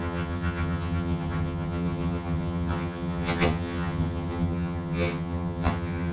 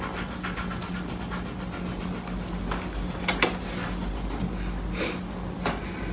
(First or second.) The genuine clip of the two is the second